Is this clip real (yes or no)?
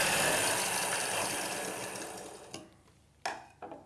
yes